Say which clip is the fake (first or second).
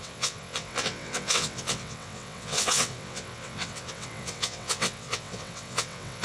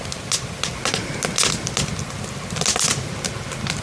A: first